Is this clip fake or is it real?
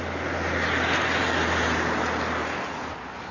real